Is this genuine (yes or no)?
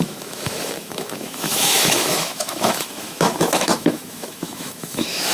no